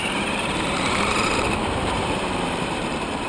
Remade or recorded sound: remade